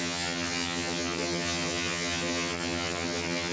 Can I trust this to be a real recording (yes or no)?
no